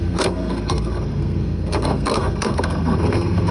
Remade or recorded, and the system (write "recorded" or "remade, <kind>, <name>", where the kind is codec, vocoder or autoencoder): remade, codec, SNAC